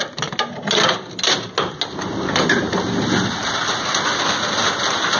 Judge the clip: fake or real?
real